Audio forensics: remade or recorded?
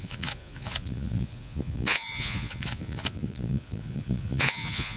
remade